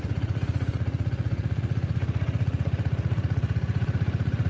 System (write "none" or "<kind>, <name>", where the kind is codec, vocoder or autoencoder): vocoder, Vocos